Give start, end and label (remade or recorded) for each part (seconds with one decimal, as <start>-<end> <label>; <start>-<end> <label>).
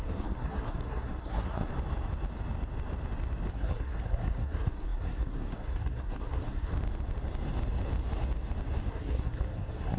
0.0-1.7 remade; 1.7-3.5 recorded; 3.5-6.7 remade; 6.7-8.9 recorded; 8.9-10.0 remade